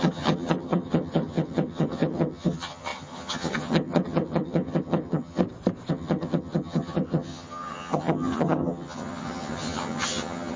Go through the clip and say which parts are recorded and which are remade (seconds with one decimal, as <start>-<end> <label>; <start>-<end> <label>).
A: 0.0-5.4 remade; 5.4-5.9 recorded; 5.9-10.6 remade